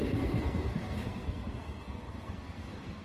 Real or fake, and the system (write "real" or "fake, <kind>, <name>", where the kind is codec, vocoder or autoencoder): fake, codec, SNAC